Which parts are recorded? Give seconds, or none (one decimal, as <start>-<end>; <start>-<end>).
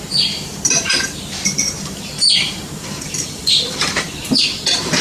4.2-5.0